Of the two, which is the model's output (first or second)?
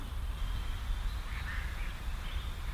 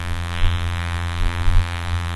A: second